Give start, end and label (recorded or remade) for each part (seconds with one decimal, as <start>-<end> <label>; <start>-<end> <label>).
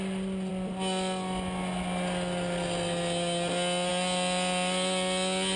0.0-5.6 recorded